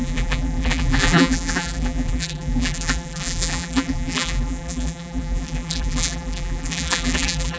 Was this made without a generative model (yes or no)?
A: no